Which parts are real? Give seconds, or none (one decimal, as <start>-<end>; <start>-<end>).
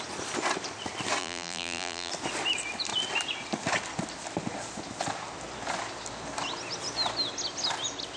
0.0-1.2; 2.1-8.2